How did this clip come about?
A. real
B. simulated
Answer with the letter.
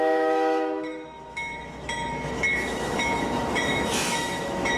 B